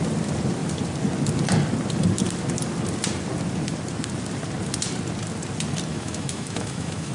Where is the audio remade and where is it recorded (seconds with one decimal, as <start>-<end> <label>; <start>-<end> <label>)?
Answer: 0.0-5.9 recorded; 5.9-7.1 remade